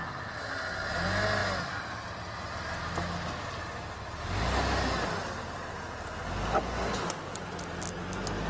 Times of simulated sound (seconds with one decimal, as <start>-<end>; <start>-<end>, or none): none